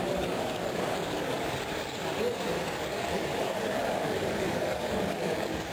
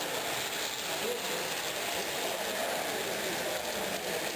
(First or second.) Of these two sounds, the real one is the second